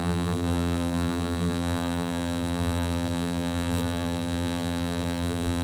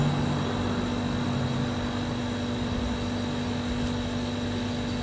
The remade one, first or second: first